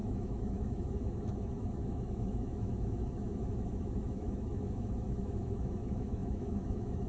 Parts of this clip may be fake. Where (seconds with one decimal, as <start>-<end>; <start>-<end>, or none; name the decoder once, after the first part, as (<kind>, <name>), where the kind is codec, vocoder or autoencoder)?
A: 0.0-7.1 (autoencoder, DAC-VAE)